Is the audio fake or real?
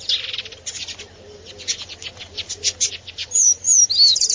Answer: real